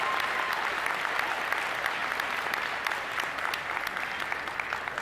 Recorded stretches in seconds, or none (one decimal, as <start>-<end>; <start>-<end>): 0.0-5.0